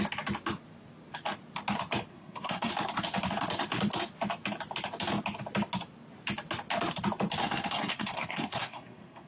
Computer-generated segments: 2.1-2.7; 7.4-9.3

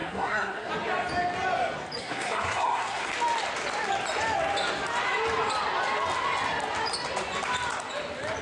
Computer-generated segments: 0.0-0.7; 2.0-3.1